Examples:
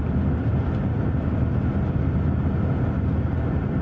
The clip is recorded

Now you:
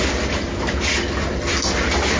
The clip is recorded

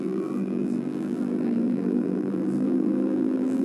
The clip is remade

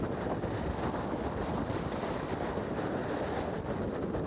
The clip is recorded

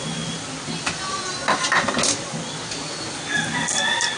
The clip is recorded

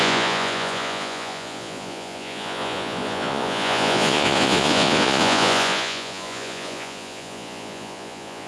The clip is remade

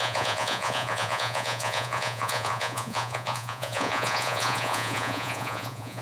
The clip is remade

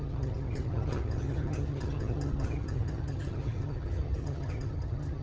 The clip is remade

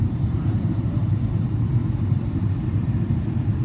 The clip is remade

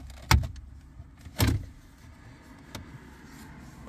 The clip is recorded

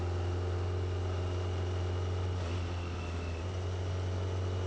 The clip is recorded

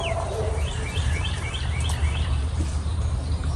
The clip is remade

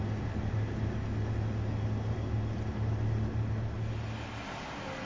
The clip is recorded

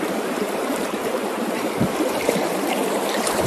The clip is remade